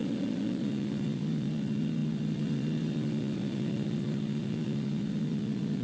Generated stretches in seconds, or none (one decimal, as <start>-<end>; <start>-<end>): 0.0-5.8